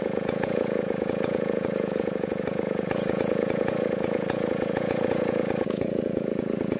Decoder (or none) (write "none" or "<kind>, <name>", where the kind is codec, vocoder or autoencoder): vocoder, Vocos